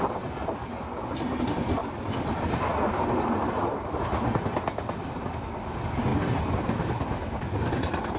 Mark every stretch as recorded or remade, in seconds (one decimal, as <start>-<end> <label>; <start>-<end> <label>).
0.0-8.2 recorded